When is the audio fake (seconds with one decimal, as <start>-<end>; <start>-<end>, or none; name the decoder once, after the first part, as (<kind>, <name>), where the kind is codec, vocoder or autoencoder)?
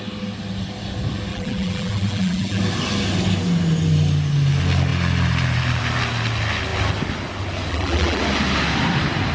1.3-2.6 (vocoder, BigVGAN v2); 7.7-8.2